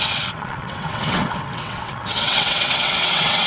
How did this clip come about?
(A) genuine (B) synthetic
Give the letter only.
B